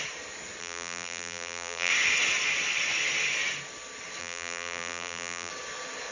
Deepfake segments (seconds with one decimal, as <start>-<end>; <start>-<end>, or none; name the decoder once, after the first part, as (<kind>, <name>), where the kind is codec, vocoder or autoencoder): 0.6-1.9 (vocoder, BigVGAN v2); 4.2-5.5